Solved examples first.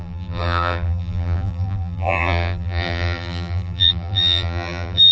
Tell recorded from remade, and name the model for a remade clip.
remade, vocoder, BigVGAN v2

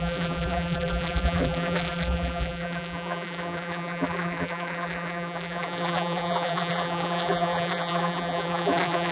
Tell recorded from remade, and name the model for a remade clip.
remade, vocoder, BigVGAN v2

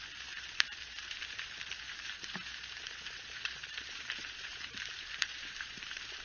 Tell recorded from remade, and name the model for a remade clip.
remade, vocoder, BigVGAN v2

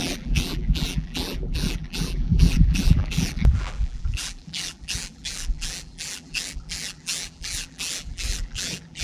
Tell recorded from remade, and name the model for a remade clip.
remade, vocoder, BigVGAN v2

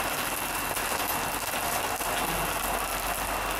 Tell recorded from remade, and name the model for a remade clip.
recorded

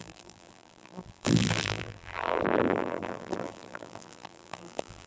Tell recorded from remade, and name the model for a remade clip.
remade, vocoder, BigVGAN v2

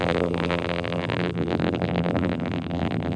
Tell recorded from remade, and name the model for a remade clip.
remade, vocoder, BigVGAN v2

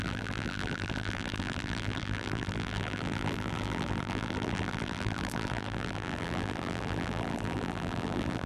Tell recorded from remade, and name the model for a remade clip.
remade, vocoder, BigVGAN v2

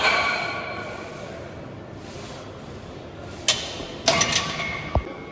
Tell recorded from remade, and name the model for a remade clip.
recorded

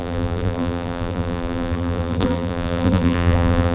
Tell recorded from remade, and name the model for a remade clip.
remade, vocoder, BigVGAN v2